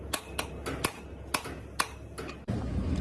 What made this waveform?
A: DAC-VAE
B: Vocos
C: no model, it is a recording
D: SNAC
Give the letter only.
C